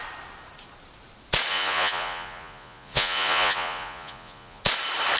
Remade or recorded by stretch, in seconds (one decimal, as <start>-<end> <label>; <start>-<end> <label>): 0.0-1.5 recorded; 1.5-4.6 remade; 4.6-5.2 recorded